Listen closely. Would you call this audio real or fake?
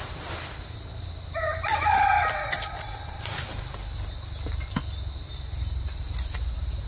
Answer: real